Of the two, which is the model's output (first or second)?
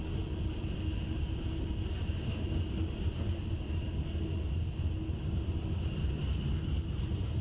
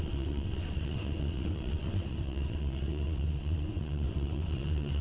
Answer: second